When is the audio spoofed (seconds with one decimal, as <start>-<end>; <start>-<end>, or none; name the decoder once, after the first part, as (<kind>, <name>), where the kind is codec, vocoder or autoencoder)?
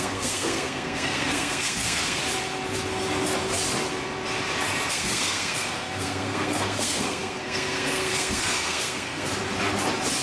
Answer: 0.0-2.2 (codec, SNAC); 4.9-9.3